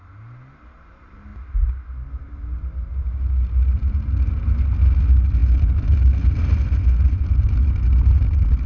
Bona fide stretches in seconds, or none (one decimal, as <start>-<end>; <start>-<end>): 0.0-8.7